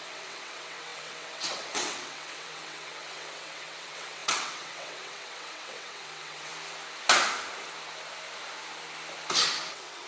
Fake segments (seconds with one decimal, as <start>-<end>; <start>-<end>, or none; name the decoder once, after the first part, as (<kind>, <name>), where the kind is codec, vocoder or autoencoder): 0.0-6.5 (vocoder, WaveNeXt); 9.7-10.1